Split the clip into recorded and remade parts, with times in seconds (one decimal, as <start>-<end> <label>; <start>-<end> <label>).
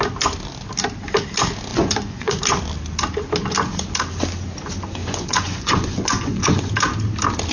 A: 0.0-1.7 recorded; 1.7-2.4 remade; 2.4-5.0 recorded; 5.0-6.7 remade; 6.7-7.5 recorded